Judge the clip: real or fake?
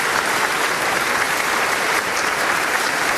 fake